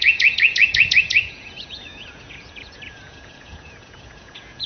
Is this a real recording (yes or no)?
no